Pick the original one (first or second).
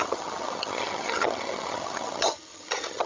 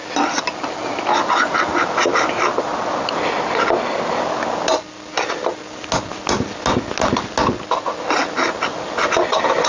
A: second